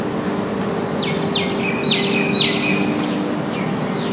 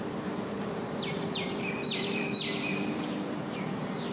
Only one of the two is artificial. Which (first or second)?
second